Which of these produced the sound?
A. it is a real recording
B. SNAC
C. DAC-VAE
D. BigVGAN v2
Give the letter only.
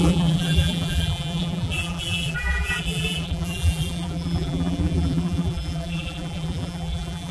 D